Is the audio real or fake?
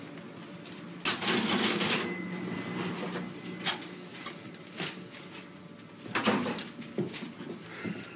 real